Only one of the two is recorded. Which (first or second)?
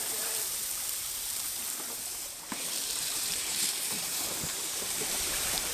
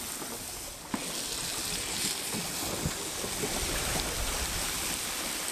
second